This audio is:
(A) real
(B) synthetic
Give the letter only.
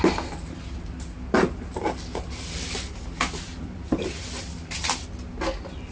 A